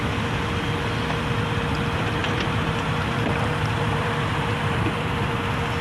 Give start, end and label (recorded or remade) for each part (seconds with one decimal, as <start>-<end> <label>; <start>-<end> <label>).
0.0-2.2 recorded; 2.2-5.3 remade; 5.3-5.8 recorded